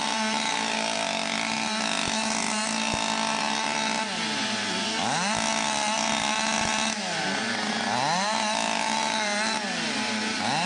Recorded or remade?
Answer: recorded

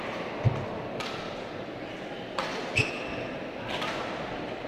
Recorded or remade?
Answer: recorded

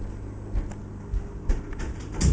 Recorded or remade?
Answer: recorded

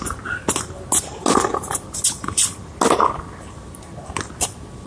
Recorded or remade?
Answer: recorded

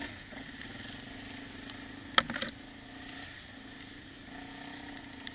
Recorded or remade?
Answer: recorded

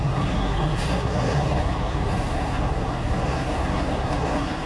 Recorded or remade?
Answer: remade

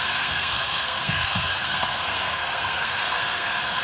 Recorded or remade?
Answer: remade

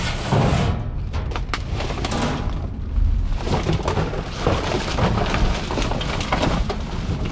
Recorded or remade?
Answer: recorded